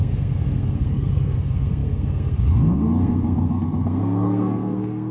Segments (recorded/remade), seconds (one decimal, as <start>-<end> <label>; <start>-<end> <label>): 0.0-5.1 remade